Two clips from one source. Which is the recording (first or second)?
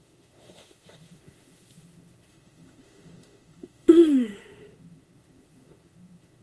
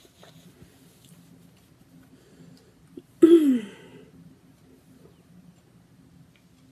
second